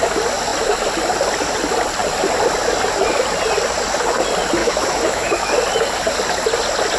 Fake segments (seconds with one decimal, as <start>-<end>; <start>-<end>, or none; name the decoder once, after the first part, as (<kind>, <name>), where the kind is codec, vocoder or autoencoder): 4.6-5.5 (autoencoder, DAC-VAE)